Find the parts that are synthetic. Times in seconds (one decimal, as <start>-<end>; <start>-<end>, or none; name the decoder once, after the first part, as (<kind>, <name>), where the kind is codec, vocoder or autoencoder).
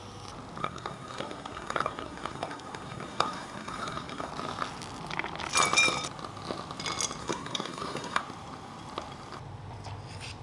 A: 0.6-4.3 (codec, SNAC); 7.2-8.2